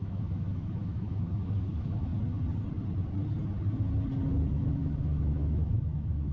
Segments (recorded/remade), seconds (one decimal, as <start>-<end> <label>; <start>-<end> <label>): 0.0-2.1 remade; 2.1-4.5 recorded; 4.5-6.3 remade